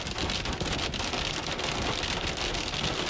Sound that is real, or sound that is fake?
real